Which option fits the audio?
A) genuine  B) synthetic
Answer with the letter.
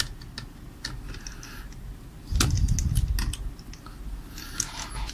A